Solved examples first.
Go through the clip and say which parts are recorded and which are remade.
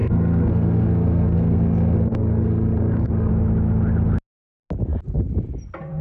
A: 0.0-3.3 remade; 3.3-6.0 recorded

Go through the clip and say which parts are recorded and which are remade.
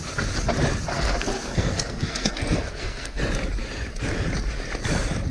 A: 0.0-0.9 recorded; 0.9-3.2 remade; 3.2-5.3 recorded